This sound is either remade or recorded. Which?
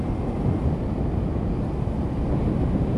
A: recorded